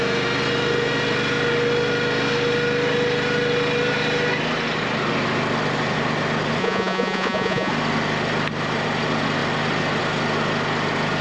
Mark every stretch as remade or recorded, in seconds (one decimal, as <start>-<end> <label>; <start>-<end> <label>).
0.0-6.6 recorded; 6.6-7.7 remade; 7.7-11.2 recorded